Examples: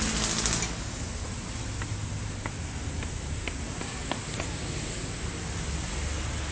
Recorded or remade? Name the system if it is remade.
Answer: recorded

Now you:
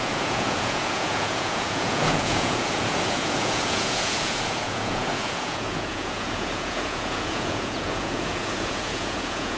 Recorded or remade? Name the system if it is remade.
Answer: remade, vocoder, Vocos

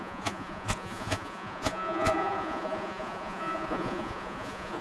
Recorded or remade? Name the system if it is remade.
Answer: remade, vocoder, Vocos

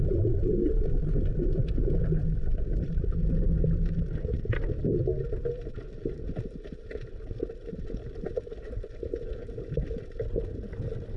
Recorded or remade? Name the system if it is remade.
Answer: recorded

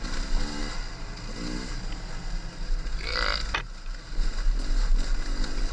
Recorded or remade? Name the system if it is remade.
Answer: recorded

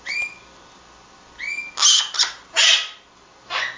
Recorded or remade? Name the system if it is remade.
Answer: recorded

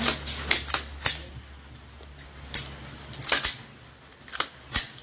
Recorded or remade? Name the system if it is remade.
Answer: recorded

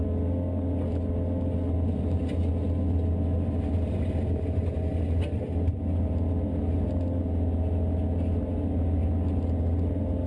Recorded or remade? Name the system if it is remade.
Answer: recorded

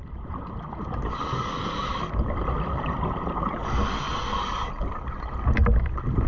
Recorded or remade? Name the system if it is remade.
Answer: recorded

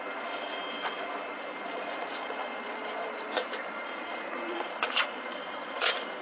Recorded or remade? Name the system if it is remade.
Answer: remade, vocoder, Vocos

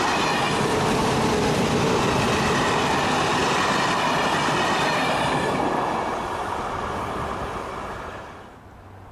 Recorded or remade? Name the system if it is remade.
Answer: recorded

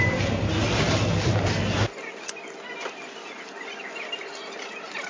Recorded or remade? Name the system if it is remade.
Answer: recorded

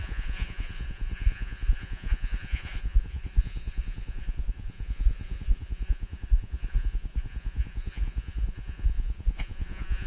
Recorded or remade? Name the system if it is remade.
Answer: remade, vocoder, Vocos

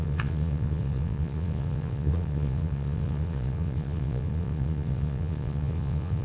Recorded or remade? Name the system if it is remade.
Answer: remade, vocoder, Vocos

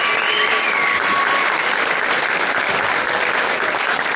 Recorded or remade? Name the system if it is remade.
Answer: recorded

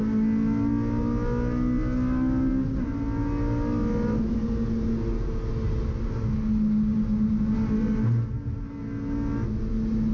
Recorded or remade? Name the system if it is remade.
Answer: recorded